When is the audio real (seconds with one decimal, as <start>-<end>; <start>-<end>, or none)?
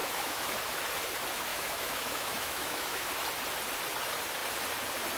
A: 0.5-1.5; 3.0-5.2